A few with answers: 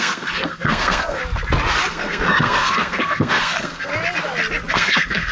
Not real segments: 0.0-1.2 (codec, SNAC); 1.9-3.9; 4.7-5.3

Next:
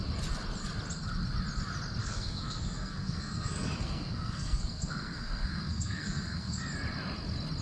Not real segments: 2.0-6.6 (codec, SNAC)

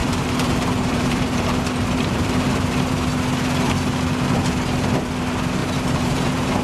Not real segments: 0.0-2.9 (vocoder, BigVGAN v2); 5.6-6.6